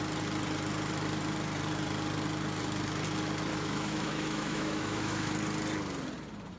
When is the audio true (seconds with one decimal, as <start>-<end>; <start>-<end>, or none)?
0.0-3.5; 5.3-6.6